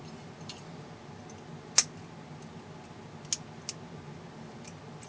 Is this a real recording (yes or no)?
yes